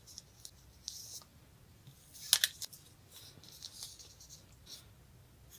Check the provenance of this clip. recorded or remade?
recorded